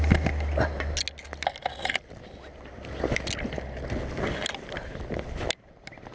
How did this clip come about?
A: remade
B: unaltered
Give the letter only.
B